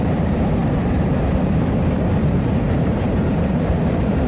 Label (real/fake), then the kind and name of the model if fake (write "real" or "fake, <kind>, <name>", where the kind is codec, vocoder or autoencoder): fake, vocoder, BigVGAN v2